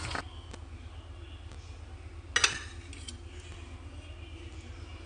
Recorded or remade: recorded